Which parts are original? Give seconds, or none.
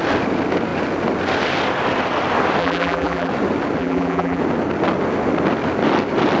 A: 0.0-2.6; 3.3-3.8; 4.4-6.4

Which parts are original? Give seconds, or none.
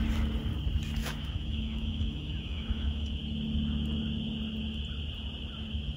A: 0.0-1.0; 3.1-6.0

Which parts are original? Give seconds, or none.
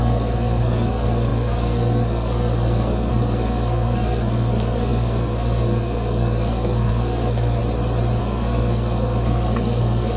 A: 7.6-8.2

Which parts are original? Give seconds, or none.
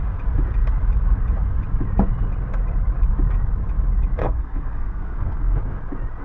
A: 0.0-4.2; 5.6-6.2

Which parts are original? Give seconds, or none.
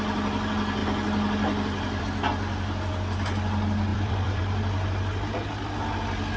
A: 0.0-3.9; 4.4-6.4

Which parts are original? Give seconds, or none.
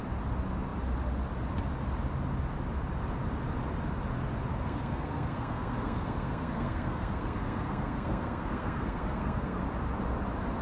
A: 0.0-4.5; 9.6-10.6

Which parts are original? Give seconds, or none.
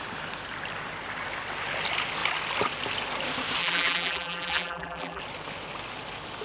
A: 0.0-3.6; 5.2-6.4